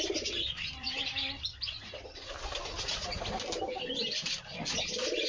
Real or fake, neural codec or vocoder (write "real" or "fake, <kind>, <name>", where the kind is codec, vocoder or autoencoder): real